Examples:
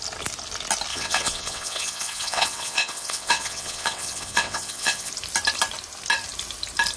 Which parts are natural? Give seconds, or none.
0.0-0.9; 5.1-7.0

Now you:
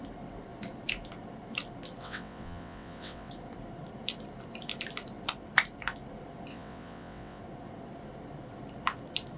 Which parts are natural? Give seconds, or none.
0.0-2.0; 3.3-6.5; 7.4-9.4